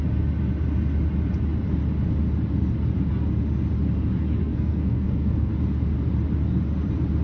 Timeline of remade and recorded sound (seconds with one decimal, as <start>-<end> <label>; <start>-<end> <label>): 0.0-4.4 recorded; 4.4-5.5 remade; 5.5-7.2 recorded